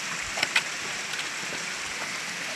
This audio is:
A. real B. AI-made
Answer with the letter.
A